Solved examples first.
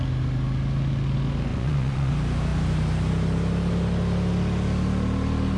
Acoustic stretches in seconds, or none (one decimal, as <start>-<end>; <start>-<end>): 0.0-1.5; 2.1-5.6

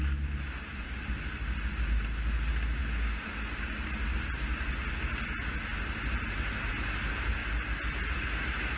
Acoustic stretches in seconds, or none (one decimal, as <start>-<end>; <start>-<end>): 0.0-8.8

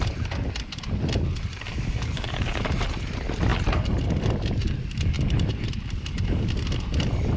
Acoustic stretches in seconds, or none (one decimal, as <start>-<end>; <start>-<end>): 0.0-1.7; 2.6-7.4